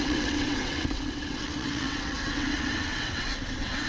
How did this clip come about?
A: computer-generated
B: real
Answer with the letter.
A